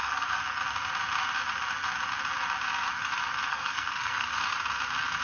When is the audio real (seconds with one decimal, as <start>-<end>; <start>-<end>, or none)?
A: 0.4-3.5; 4.4-5.2